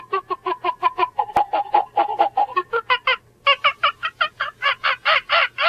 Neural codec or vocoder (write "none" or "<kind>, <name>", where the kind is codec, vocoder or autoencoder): none